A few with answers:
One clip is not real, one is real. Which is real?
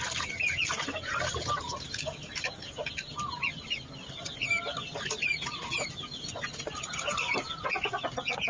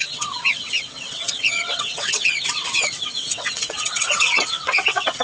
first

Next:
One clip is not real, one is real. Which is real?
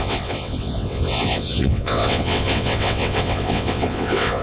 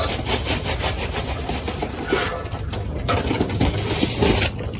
second